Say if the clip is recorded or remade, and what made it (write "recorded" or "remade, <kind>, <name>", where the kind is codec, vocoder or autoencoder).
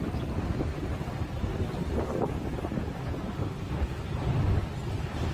recorded